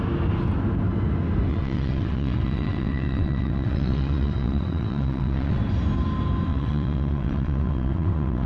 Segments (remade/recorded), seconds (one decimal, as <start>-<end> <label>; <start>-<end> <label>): 0.0-1.5 recorded; 1.5-5.6 remade; 5.6-6.5 recorded; 6.5-8.5 remade